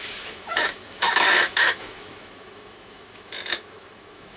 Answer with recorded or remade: remade